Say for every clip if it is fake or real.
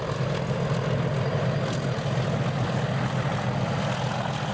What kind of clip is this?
real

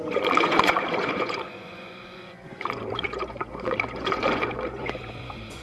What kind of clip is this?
fake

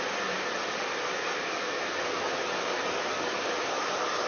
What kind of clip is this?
real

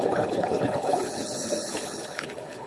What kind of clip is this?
fake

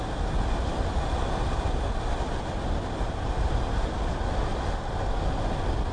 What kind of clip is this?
real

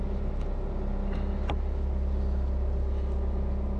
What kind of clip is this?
real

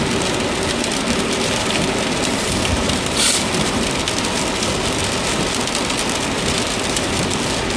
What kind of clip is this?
real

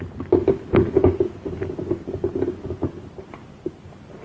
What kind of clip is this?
fake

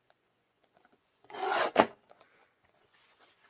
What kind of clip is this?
fake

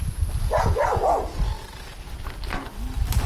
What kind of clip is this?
real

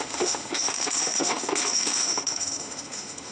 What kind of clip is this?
fake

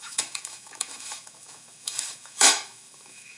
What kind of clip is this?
fake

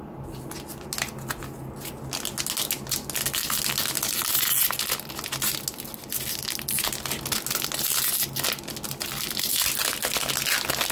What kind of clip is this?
real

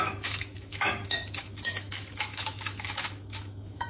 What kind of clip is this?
fake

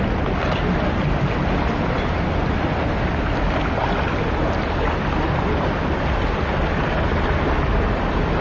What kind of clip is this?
real